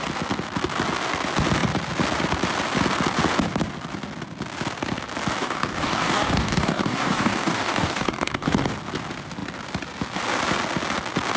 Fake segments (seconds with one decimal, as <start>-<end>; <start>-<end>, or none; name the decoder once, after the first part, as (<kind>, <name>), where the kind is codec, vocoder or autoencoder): 5.4-8.7 (codec, DAC)